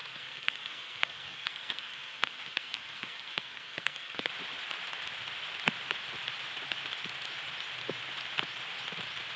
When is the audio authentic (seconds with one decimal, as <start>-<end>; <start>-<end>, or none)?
4.3-9.4